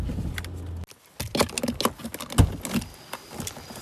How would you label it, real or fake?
real